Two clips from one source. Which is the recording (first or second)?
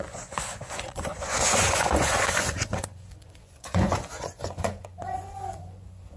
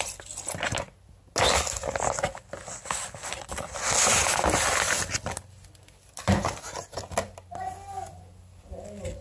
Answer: second